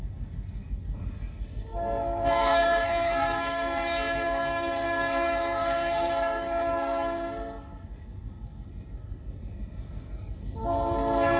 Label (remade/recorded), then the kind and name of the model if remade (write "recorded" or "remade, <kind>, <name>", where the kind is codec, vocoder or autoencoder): remade, codec, SNAC